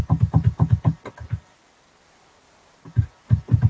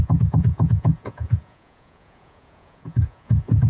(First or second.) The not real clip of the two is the second